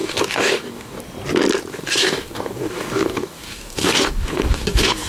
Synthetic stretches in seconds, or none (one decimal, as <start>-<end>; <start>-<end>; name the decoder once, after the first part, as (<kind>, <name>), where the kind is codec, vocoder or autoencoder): 0.0-1.0 (codec, DAC); 1.7-5.1